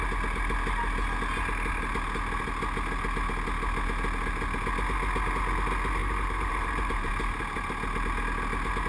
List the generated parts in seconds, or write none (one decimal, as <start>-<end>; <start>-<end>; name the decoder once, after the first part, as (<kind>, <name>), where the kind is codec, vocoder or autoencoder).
6.0-7.1 (vocoder, BigVGAN v2)